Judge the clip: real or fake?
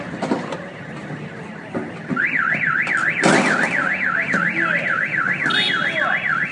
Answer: real